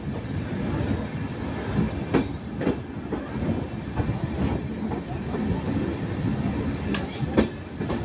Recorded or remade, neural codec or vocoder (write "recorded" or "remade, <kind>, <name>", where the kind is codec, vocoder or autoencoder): recorded